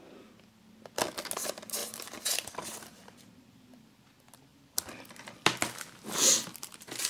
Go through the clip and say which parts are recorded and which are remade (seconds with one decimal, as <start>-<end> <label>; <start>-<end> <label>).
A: 0.0-1.8 recorded; 1.8-3.5 remade; 3.5-4.5 recorded; 4.5-5.0 remade; 5.0-7.1 recorded